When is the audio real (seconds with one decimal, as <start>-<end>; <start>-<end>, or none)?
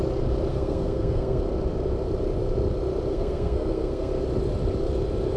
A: 0.0-0.5; 1.4-3.1; 4.1-5.4